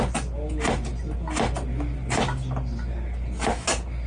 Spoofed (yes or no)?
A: no